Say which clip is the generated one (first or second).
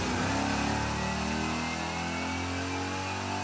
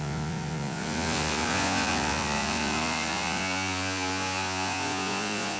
second